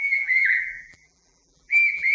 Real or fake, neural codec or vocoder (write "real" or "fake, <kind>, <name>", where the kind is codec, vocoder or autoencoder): fake, vocoder, BigVGAN v2